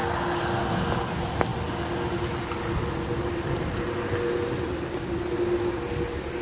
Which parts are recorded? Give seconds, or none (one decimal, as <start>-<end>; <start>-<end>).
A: 0.0-6.4